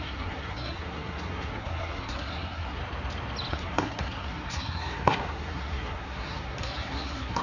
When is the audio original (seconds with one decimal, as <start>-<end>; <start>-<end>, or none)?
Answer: 2.8-3.5